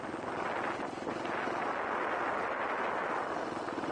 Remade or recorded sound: recorded